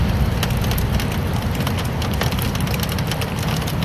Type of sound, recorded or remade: recorded